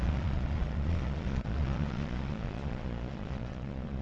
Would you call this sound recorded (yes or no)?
no